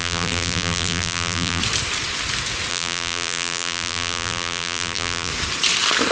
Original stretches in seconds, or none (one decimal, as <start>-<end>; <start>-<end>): 1.6-2.7; 5.3-6.1